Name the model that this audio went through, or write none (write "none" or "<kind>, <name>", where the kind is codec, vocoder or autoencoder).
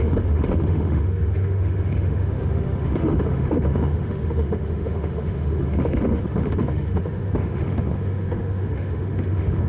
autoencoder, DAC-VAE